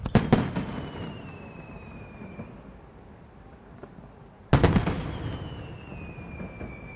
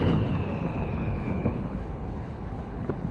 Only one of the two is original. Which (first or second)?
first